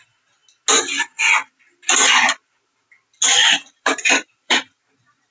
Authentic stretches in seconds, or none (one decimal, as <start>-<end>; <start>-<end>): 0.0-3.4; 4.8-5.3

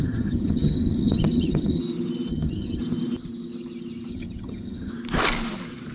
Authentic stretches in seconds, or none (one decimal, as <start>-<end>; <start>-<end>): 1.8-2.3; 2.8-4.1; 4.9-5.9

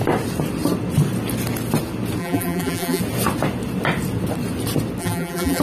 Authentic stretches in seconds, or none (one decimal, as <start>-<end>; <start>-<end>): 0.0-2.2; 3.0-5.0